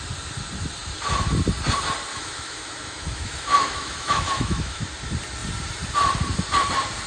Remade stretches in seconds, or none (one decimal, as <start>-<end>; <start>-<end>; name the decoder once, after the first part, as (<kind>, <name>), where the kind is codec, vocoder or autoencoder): 2.1-4.8 (autoencoder, DAC-VAE)

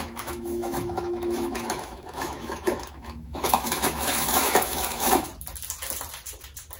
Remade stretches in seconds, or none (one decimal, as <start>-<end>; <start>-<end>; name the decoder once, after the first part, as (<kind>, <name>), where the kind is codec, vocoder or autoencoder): 0.0-5.3 (autoencoder, DAC-VAE)

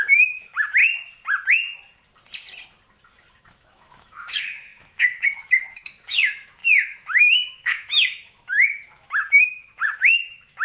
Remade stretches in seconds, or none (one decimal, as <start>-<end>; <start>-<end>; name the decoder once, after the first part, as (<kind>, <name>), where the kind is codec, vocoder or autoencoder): 0.0-0.8 (autoencoder, DAC-VAE); 3.4-10.6